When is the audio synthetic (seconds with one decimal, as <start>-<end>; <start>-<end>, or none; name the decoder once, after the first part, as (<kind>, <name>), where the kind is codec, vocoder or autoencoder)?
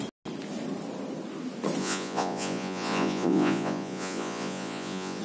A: 1.8-5.2 (vocoder, Vocos)